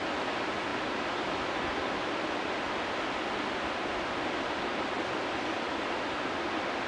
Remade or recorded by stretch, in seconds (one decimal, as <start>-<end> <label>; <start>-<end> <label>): 0.0-6.9 recorded